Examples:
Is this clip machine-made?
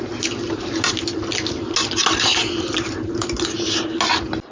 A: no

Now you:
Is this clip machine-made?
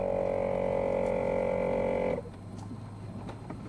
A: no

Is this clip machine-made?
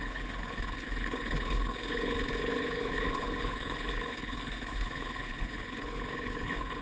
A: yes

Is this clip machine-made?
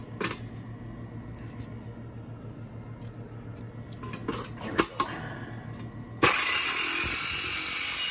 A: no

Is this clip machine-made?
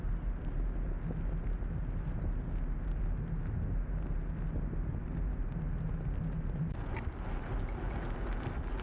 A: no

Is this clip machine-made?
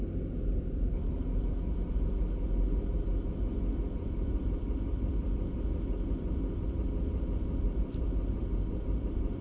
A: yes